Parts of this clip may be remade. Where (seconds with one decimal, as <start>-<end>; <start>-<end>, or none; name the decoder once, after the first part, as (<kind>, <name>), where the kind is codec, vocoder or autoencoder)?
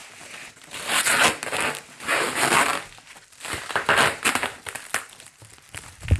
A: none